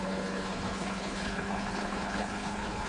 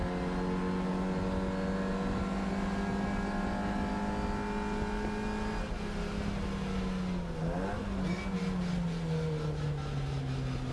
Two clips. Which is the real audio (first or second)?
second